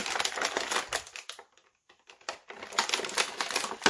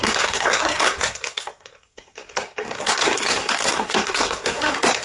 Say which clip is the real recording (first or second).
first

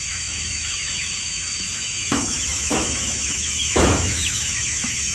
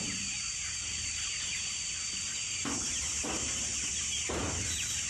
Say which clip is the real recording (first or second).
second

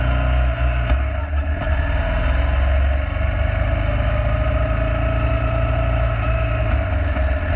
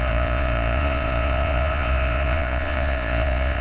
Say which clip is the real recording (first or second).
first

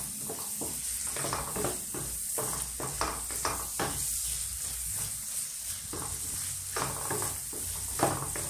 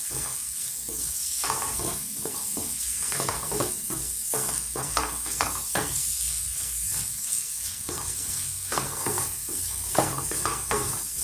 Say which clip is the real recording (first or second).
first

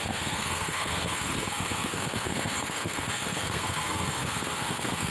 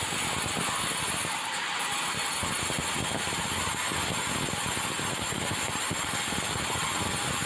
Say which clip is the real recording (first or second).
second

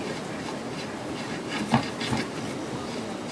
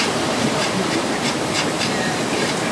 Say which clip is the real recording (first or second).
first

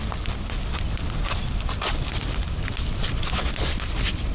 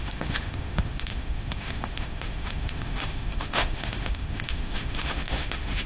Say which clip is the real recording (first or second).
first